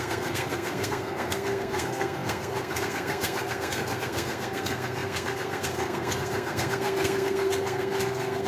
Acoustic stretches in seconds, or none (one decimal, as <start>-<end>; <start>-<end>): none